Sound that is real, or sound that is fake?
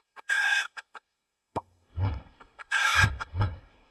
fake